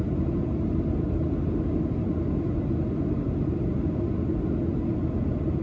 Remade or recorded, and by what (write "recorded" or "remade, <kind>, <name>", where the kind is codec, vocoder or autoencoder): recorded